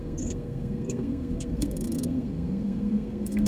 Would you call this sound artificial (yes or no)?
yes